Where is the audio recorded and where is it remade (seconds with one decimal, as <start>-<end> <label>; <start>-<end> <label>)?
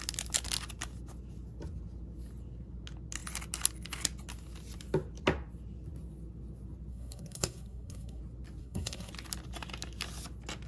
0.0-6.9 recorded; 6.9-8.2 remade; 8.2-8.6 recorded; 8.6-9.1 remade; 9.1-10.7 recorded